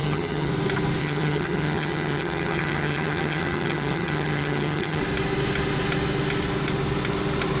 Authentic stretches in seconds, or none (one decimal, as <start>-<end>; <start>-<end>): 0.5-1.0; 5.0-7.6